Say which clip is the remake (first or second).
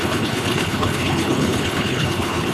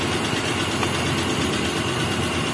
first